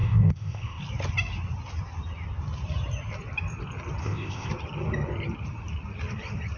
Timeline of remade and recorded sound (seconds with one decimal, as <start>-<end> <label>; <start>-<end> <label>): 0.0-0.8 remade; 0.8-4.0 recorded; 4.0-4.5 remade; 4.5-6.6 recorded